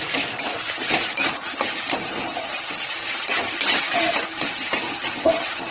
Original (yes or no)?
yes